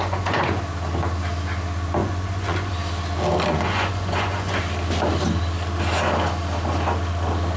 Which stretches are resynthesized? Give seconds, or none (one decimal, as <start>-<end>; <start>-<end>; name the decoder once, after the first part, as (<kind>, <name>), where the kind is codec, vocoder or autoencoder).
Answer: 0.0-0.6 (vocoder, Vocos); 2.0-2.7; 3.5-4.6